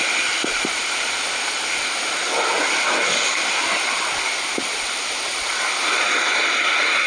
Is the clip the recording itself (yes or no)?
yes